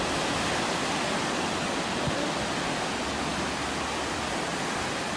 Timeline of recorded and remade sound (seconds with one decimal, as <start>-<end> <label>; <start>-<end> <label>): 0.0-5.2 recorded